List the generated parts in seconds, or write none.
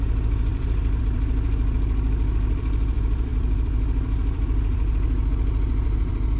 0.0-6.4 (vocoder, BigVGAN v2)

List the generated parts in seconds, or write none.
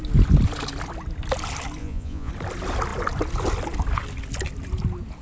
1.8-2.3 (vocoder, Vocos)